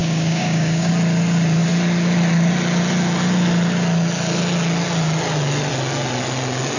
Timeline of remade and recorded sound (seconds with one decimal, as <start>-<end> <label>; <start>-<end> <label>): 0.0-0.9 remade; 0.9-6.8 recorded